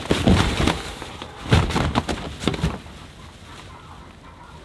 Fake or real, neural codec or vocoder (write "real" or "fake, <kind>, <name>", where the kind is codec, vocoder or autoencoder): real